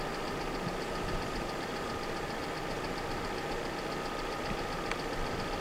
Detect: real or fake real